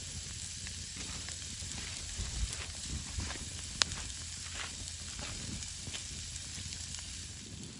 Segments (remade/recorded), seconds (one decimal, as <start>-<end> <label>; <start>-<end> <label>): 0.0-0.9 recorded; 0.9-3.5 remade; 3.5-5.5 recorded; 5.5-6.0 remade; 6.0-6.6 recorded; 6.6-7.8 remade